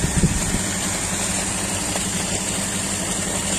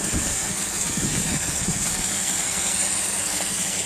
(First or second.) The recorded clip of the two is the first